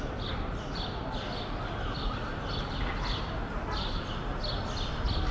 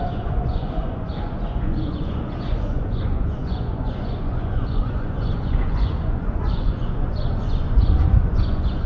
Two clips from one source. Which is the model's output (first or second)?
second